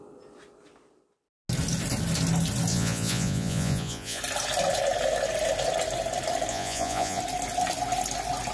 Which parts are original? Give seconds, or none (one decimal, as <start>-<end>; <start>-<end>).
0.0-2.7; 4.2-6.5; 7.2-8.5